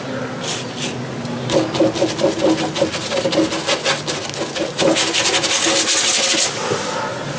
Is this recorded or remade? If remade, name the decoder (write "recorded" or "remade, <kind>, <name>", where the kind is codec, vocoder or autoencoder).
recorded